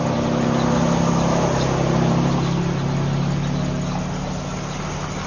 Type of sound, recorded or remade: recorded